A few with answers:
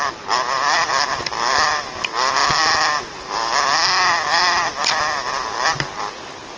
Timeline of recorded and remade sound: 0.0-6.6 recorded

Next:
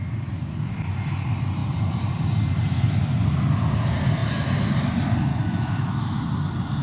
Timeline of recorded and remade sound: 0.0-5.3 recorded; 5.3-6.2 remade; 6.2-6.8 recorded